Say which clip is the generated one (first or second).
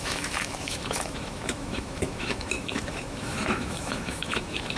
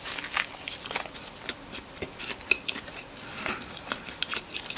first